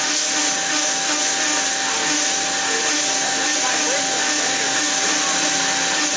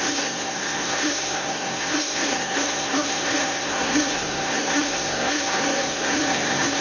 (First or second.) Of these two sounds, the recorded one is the first